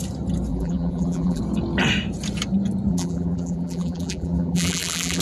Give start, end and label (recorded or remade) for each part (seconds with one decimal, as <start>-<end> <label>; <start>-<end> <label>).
0.0-0.5 recorded; 0.5-1.4 remade; 1.4-2.9 recorded; 2.9-5.2 remade